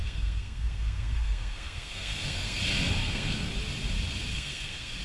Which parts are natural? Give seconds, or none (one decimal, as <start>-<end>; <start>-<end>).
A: 2.6-3.0; 3.5-4.3